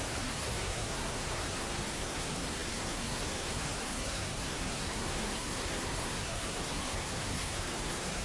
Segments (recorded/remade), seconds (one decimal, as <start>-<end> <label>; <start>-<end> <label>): 0.0-8.2 remade